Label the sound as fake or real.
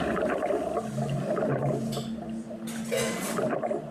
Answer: real